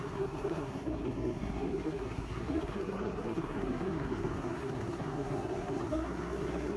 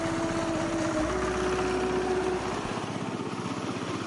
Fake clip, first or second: first